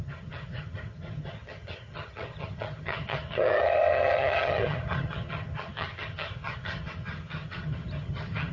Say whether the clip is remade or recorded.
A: remade